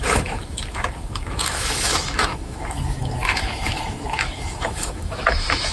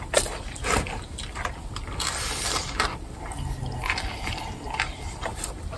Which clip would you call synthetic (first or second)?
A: first